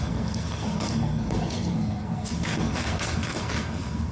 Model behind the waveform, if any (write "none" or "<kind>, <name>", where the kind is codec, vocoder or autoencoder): codec, SNAC